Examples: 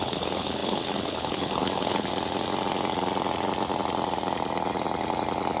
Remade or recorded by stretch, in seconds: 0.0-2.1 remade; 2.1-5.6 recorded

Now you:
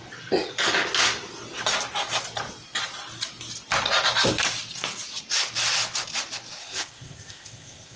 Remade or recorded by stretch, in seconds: 0.0-6.6 recorded; 6.6-8.0 remade

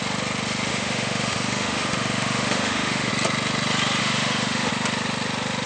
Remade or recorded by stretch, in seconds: 0.0-0.7 recorded; 0.7-3.1 remade; 3.1-4.0 recorded; 4.0-4.7 remade; 4.7-5.7 recorded